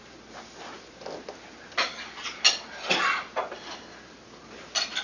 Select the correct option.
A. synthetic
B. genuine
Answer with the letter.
B